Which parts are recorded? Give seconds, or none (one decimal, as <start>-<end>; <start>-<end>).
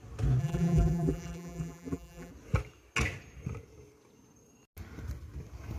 0.0-0.4; 2.3-5.8